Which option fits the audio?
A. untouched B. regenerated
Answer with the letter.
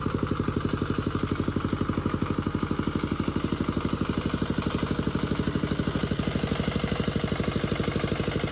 A